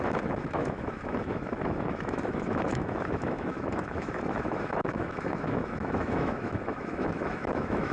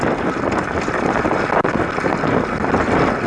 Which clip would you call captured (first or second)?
second